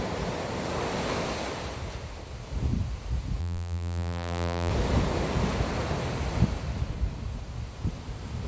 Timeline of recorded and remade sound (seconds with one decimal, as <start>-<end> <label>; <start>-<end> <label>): 0.0-3.4 recorded; 3.4-4.7 remade; 4.7-8.5 recorded